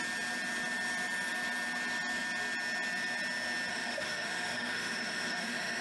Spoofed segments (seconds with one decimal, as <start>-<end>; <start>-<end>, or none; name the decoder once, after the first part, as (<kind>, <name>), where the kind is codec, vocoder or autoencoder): 3.7-5.8 (autoencoder, DAC-VAE)